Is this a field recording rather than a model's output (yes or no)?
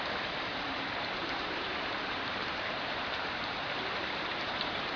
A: no